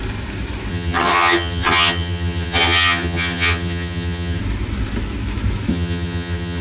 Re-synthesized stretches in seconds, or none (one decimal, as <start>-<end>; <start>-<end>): 0.7-4.4; 5.7-6.6